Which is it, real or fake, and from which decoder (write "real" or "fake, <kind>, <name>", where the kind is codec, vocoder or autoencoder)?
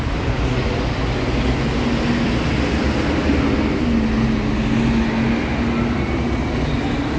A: real